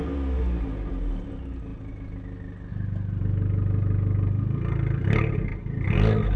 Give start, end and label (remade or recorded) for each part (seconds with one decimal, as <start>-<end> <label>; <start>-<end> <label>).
0.0-6.4 recorded